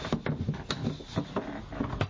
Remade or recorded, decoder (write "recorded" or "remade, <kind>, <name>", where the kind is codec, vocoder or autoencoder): recorded